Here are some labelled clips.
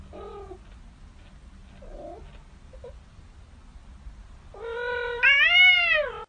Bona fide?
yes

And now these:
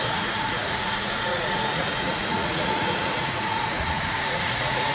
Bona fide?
no